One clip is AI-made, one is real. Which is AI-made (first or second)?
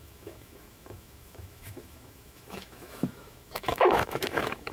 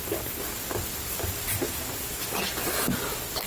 first